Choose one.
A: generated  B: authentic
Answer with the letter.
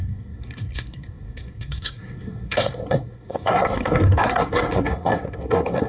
A